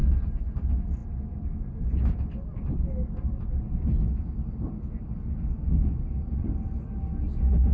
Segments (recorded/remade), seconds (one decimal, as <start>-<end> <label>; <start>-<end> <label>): 0.0-7.7 recorded

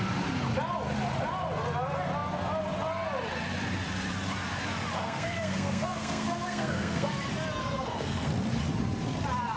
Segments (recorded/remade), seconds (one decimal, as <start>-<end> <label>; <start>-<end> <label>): 0.0-5.0 recorded; 5.0-7.1 remade; 7.1-7.6 recorded; 7.6-8.3 remade; 8.3-9.6 recorded

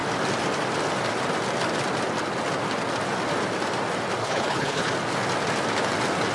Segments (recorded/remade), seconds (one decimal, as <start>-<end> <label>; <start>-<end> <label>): 0.0-4.2 recorded; 4.2-4.9 remade; 4.9-6.3 recorded